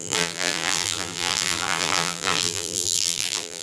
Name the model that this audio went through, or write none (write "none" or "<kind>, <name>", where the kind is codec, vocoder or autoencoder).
vocoder, BigVGAN v2